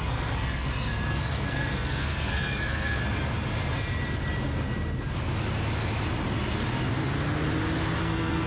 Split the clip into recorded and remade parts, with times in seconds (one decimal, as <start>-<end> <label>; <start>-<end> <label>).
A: 0.0-3.0 remade; 3.0-8.0 recorded; 8.0-8.5 remade